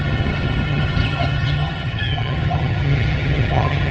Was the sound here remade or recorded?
remade